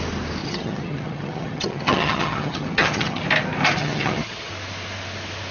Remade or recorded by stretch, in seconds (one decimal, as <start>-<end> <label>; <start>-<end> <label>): 0.0-0.4 recorded; 0.4-3.2 remade; 3.2-3.8 recorded; 3.8-4.5 remade; 4.5-5.5 recorded